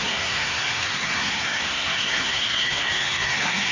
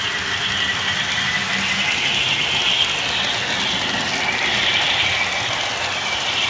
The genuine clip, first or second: second